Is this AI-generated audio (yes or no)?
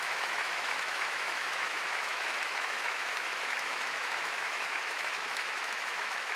yes